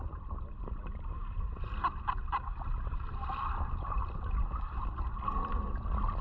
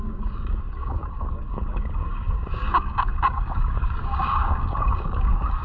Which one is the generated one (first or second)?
second